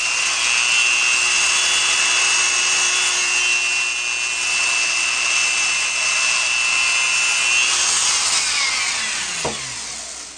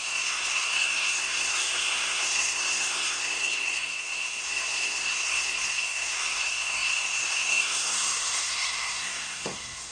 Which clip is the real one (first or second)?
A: first